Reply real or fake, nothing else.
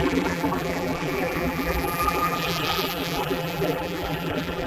fake